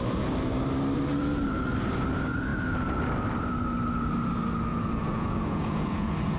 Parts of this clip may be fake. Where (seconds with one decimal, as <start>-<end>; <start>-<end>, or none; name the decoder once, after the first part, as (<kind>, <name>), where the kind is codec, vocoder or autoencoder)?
4.7-6.4 (vocoder, Vocos)